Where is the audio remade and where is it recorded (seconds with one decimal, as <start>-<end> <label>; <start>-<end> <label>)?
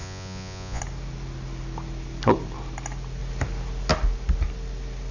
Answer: 0.0-0.8 remade; 0.8-5.1 recorded